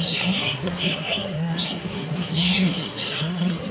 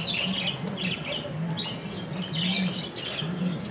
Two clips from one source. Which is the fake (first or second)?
first